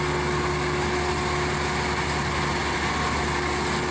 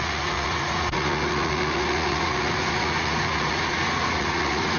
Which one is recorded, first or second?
first